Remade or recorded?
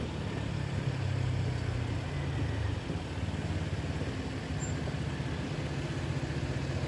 recorded